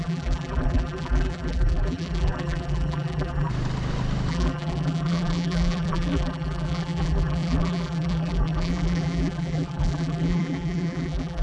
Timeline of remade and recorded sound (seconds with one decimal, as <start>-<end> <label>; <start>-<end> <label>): 0.0-3.5 remade; 3.5-4.3 recorded; 4.3-11.4 remade